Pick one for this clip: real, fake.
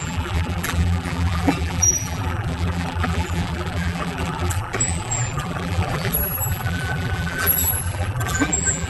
fake